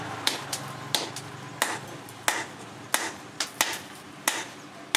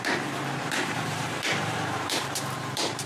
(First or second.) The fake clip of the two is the second